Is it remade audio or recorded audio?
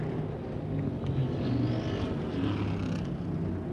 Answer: recorded